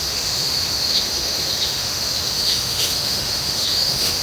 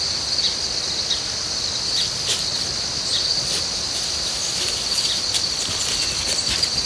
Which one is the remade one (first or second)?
first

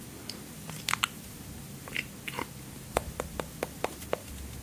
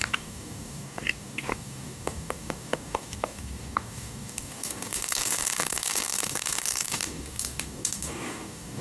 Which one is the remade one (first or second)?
second